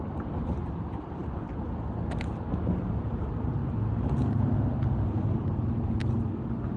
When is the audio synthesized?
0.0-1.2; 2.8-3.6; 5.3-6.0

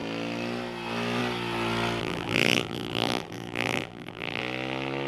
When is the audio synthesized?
2.0-4.4

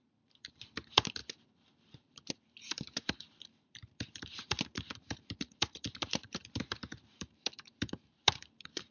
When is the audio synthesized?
0.0-8.9

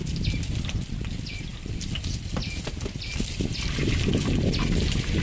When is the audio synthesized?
none